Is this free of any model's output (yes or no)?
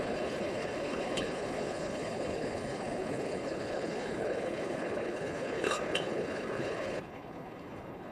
no